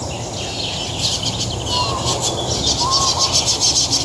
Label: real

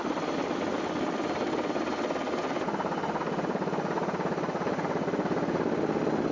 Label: real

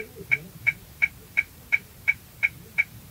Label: fake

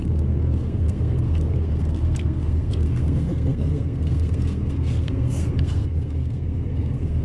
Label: fake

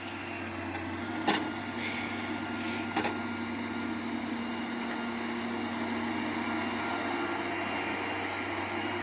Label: real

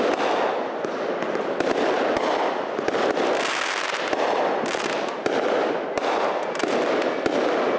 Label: real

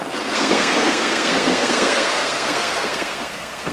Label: fake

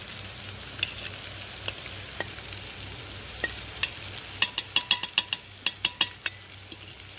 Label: real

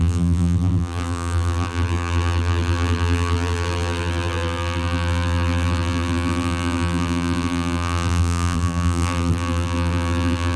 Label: fake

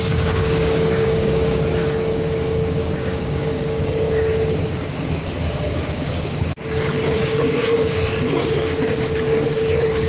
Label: fake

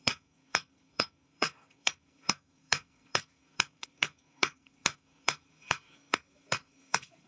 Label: fake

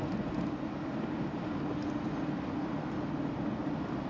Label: real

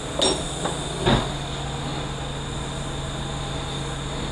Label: real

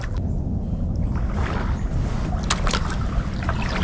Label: real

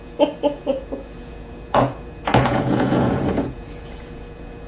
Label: fake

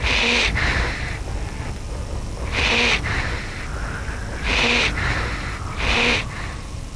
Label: real